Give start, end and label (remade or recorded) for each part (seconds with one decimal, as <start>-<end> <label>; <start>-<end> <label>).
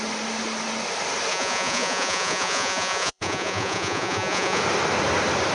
0.0-1.3 recorded; 1.3-4.6 remade; 4.6-5.5 recorded